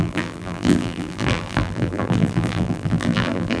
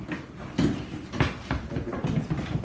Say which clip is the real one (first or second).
second